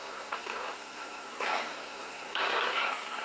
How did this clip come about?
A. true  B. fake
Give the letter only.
B